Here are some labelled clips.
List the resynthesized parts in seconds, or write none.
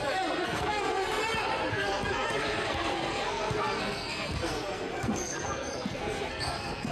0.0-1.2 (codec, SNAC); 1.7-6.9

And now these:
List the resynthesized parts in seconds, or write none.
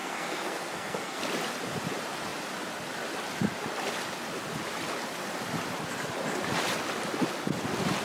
0.0-1.2 (codec, SNAC)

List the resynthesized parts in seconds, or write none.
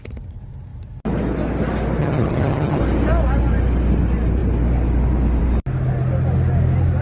2.0-2.8 (vocoder, HiFi-GAN)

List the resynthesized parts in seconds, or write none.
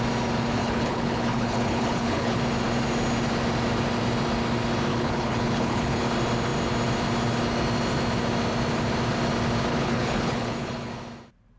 0.6-2.4 (codec, HILCodec); 4.9-6.0; 9.7-10.9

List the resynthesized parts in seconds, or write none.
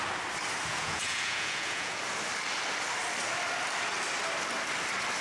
0.7-2.0 (vocoder, Vocos)